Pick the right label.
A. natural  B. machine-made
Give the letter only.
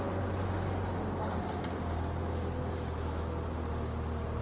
A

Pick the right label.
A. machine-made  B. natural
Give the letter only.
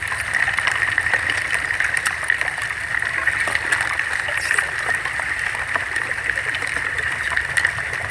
B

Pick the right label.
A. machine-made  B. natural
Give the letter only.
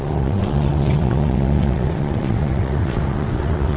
A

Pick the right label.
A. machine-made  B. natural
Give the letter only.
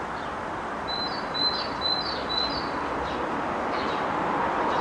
B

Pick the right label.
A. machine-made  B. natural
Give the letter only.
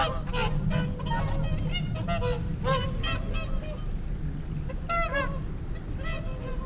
B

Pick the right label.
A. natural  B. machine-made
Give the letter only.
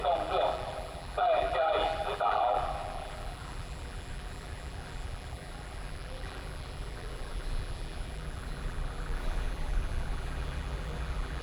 B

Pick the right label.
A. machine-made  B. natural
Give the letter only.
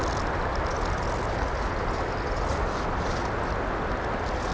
B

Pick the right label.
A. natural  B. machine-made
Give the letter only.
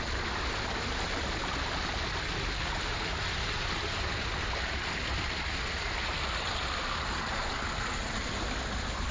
A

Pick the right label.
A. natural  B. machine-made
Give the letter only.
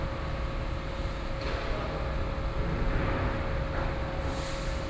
A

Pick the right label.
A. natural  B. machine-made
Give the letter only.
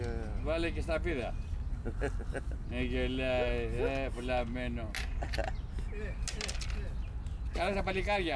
A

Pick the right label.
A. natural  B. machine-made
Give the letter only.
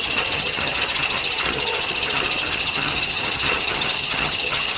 B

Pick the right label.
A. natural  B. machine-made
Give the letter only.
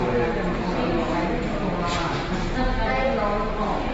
A